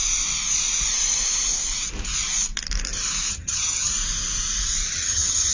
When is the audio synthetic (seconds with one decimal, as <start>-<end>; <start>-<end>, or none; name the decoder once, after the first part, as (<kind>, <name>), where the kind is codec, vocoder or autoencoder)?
3.3-3.9 (vocoder, HiFi-GAN); 4.9-5.5